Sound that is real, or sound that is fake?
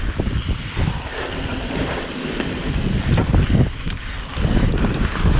real